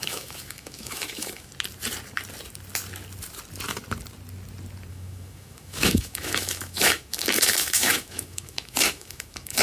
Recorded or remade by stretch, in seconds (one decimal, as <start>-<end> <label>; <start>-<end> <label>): 0.0-1.5 remade; 1.5-4.9 recorded; 4.9-9.6 remade